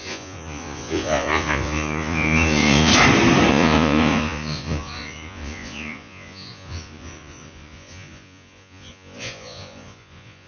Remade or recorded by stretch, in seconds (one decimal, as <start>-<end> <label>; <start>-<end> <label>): 0.0-2.9 remade; 2.9-3.5 recorded; 3.5-10.5 remade